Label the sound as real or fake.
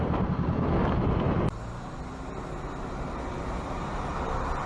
real